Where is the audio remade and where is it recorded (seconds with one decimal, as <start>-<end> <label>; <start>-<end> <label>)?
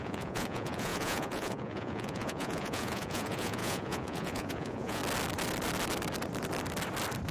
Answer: 0.0-5.0 remade; 5.0-7.3 recorded